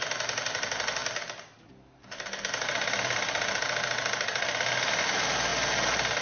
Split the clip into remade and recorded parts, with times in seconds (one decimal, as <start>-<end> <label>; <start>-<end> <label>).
0.0-6.2 recorded